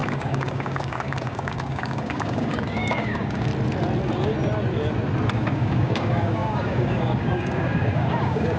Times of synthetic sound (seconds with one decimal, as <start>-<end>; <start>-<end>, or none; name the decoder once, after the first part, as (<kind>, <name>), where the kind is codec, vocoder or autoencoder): 0.0-3.5 (codec, DAC); 5.3-8.6